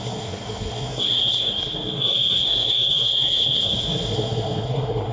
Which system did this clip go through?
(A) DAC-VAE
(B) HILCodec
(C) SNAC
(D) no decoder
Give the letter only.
C